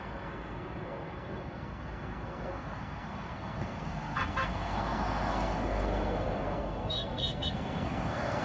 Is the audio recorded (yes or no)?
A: no